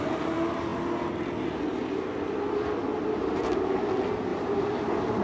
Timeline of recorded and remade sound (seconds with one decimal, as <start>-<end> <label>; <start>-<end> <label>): 0.0-4.3 recorded; 4.3-5.2 remade